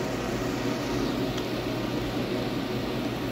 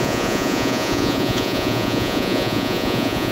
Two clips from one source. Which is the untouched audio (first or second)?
first